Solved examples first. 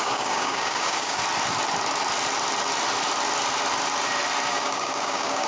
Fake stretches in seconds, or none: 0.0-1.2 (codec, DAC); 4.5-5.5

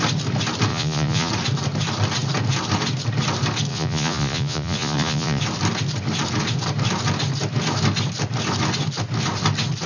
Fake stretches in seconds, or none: 0.7-1.3 (vocoder, Vocos); 3.7-5.4

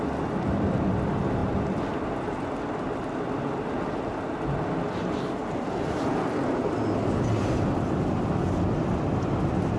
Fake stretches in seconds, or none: none

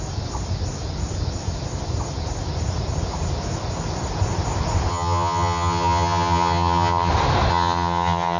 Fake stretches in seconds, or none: 4.9-7.1 (vocoder, HiFi-GAN); 7.5-8.4

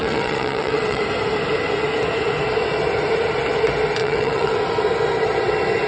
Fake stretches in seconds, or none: 0.0-1.0 (vocoder, WaveNeXt); 4.0-4.5

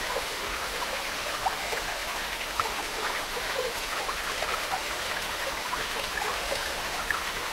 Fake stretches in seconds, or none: 0.0-7.5 (autoencoder, DAC-VAE)

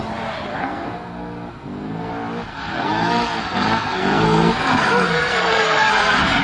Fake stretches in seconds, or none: 0.5-2.1 (codec, SNAC); 2.5-6.4

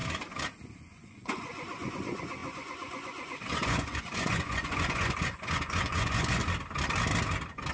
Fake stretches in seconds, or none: 0.7-6.4 (vocoder, Vocos)